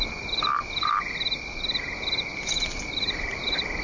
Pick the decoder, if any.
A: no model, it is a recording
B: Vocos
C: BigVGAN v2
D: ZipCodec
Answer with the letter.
A